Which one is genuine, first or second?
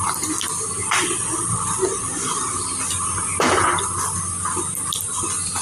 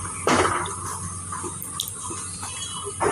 second